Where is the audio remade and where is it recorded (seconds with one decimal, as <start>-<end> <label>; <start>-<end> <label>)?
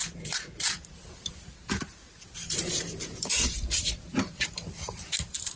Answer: 0.0-1.3 remade; 1.3-2.4 recorded; 2.4-5.6 remade